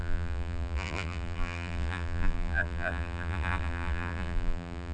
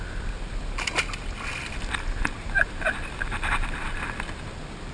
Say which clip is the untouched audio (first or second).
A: second